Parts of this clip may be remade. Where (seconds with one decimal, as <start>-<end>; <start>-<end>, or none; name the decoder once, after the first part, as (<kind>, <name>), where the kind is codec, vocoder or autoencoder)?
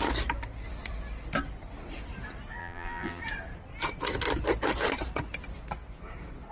2.6-3.2 (vocoder, BigVGAN v2)